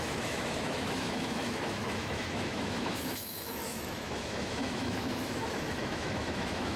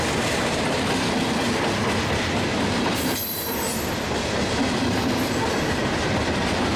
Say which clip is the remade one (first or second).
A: first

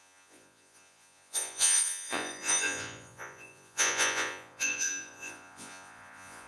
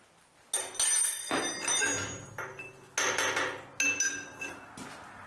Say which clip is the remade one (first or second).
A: first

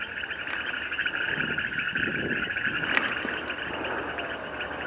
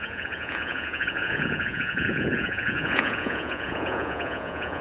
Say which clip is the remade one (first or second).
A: second